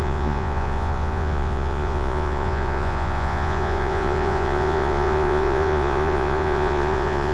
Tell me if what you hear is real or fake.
fake